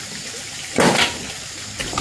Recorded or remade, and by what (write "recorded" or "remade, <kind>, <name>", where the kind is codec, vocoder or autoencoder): recorded